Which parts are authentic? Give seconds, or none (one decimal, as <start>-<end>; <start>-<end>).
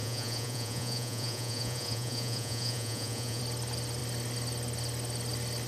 3.4-5.7